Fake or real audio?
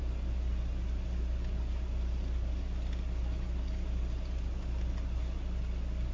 real